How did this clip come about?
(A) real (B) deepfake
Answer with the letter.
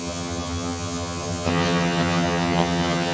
B